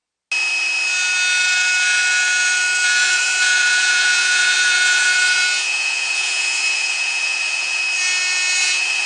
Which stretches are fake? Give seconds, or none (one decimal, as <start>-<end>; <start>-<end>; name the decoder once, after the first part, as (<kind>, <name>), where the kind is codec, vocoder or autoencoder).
3.0-7.8 (vocoder, Vocos); 8.6-9.1